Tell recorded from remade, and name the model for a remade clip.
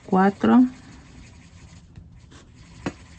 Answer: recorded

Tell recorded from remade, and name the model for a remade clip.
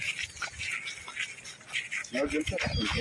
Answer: recorded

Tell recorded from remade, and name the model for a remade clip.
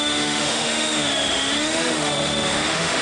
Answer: remade, autoencoder, DAC-VAE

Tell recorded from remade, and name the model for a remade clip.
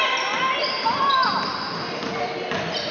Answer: recorded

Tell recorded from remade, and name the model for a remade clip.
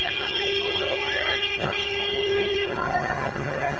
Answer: remade, vocoder, HiFi-GAN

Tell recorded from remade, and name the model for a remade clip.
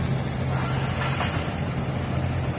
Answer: recorded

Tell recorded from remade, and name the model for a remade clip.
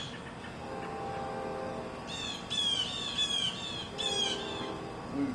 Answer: recorded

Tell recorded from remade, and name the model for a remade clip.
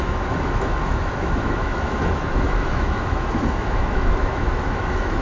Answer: remade, autoencoder, DAC-VAE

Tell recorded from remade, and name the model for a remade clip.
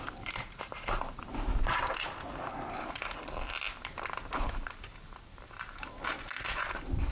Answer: recorded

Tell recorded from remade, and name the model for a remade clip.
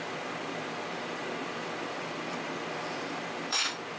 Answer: remade, vocoder, BigVGAN v2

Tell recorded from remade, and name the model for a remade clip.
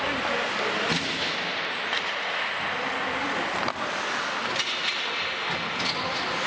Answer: recorded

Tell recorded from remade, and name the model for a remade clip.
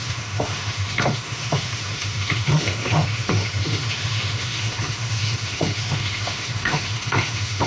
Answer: remade, autoencoder, DAC-VAE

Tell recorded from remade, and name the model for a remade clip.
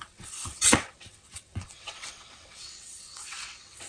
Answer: remade, vocoder, WaveNeXt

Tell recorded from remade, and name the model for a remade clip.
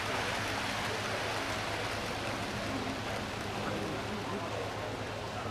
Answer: recorded